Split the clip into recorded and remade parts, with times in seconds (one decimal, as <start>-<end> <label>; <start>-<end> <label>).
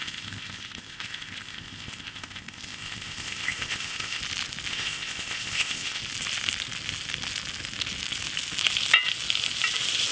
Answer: 0.0-4.2 remade; 4.2-4.7 recorded; 4.7-6.0 remade; 6.0-10.1 recorded